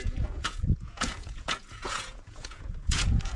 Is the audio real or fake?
fake